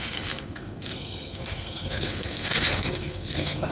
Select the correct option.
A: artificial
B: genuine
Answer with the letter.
A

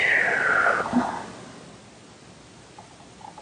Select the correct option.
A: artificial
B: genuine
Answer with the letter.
B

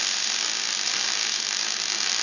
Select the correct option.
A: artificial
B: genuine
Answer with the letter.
A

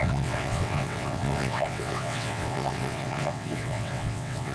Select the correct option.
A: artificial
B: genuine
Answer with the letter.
A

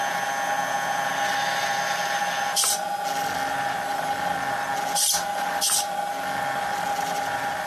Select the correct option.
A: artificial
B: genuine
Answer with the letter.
B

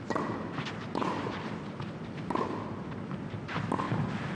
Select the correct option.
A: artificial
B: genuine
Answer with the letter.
B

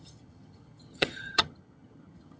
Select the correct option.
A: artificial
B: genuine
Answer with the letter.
A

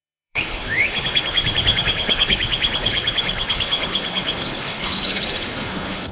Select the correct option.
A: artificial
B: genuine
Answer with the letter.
A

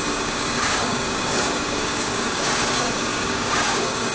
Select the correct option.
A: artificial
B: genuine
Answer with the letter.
A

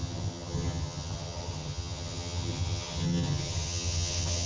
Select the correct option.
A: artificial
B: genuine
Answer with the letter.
A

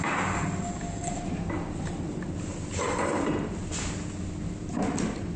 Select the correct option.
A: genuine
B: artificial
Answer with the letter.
A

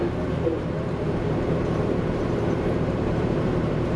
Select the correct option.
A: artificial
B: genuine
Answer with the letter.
A